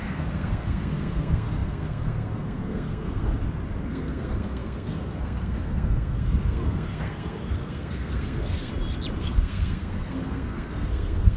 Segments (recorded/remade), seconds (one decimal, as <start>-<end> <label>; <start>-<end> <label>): 0.0-3.4 remade; 3.4-3.9 recorded; 3.9-8.7 remade; 8.7-9.2 recorded; 9.2-11.4 remade